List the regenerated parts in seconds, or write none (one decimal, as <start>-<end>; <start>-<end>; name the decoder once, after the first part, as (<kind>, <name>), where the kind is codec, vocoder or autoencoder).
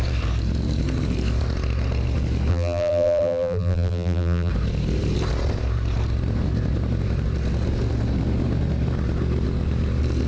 2.5-4.5 (vocoder, BigVGAN v2)